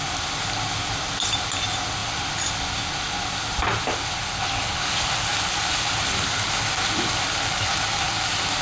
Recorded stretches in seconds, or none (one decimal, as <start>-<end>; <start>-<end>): 0.0-8.6